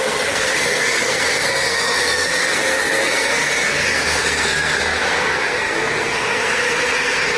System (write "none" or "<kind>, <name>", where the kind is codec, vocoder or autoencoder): codec, SNAC